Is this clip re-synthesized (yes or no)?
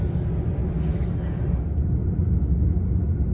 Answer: no